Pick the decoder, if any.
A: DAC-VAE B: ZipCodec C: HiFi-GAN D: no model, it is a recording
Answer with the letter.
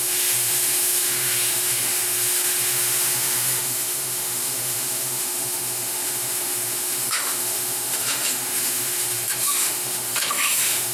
A